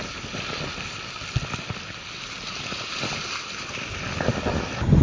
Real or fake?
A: real